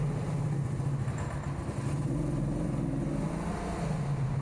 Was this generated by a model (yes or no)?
no